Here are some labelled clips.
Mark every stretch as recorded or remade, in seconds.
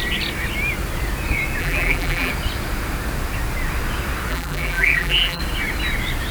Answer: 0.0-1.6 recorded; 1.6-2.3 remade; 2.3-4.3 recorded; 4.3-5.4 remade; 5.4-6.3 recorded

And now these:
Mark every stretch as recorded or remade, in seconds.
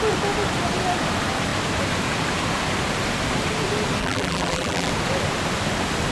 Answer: 0.0-4.0 recorded; 4.0-4.9 remade; 4.9-6.1 recorded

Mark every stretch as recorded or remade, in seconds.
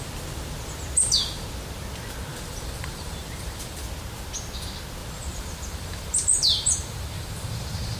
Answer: 0.0-2.3 recorded; 2.3-3.8 remade; 3.8-5.0 recorded; 5.0-8.0 remade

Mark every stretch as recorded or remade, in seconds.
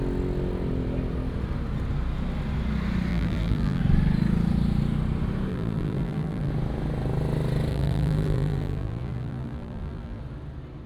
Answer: 0.0-3.1 recorded; 3.1-3.8 remade; 3.8-5.5 recorded; 5.5-6.5 remade; 6.5-7.7 recorded; 7.7-10.2 remade; 10.2-10.9 recorded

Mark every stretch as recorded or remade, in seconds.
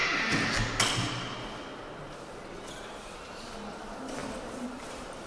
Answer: 0.0-4.2 recorded; 4.2-5.3 remade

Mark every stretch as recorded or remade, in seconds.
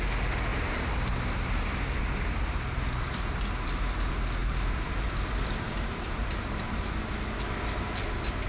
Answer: 0.0-0.5 recorded; 0.5-3.4 remade; 3.4-4.4 recorded; 4.4-6.8 remade; 6.8-8.5 recorded